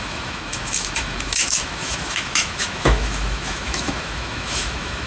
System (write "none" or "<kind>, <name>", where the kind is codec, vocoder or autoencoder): autoencoder, DAC-VAE